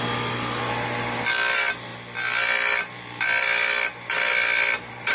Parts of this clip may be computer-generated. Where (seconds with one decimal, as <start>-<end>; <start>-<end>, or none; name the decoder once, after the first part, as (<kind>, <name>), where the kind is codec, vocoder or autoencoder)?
none